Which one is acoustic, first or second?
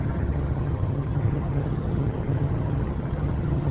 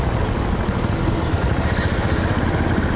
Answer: second